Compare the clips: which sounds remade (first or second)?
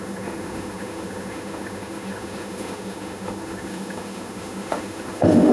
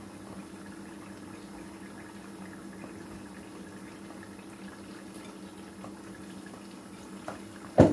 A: first